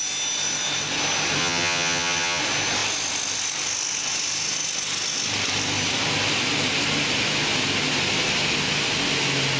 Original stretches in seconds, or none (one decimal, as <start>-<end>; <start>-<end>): 0.0-1.4; 2.4-9.6